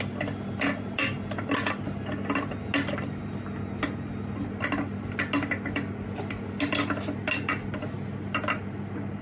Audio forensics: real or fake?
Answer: real